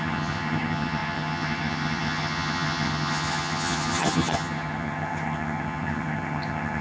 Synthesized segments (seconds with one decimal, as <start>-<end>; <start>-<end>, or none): 0.0-6.8